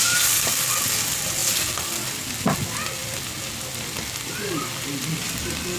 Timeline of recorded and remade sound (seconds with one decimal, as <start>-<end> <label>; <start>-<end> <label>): 0.0-5.8 recorded